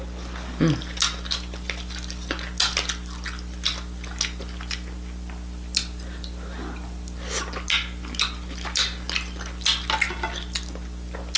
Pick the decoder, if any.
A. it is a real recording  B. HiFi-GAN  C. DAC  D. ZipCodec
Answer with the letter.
A